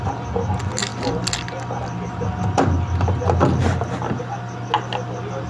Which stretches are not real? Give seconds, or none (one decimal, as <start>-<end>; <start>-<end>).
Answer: none